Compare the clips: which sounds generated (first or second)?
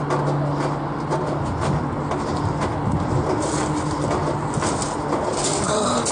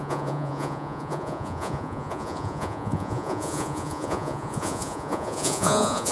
second